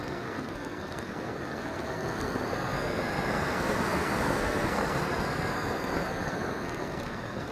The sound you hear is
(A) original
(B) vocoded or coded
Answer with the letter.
B